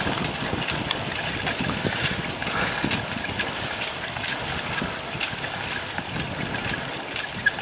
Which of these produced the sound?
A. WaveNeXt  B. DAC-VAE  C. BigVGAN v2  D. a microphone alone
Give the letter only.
C